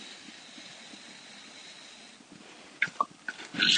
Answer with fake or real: real